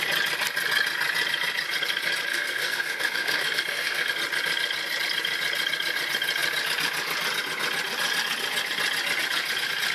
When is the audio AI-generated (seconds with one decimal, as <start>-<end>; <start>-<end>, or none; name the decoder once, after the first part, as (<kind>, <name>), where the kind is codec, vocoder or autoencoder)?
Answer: 2.3-4.1 (codec, SNAC)